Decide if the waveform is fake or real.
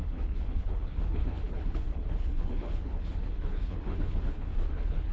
fake